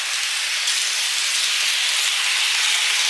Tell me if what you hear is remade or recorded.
recorded